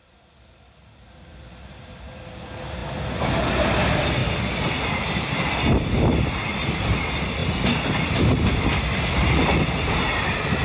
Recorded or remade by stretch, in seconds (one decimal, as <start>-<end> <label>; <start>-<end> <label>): 0.0-10.6 recorded